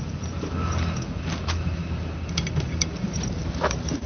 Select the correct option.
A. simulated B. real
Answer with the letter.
B